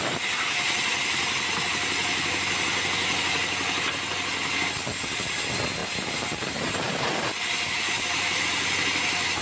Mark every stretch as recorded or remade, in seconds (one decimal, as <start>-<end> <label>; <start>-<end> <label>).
0.0-5.8 recorded; 5.8-8.4 remade; 8.4-9.4 recorded